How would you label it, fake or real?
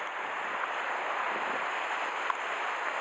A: real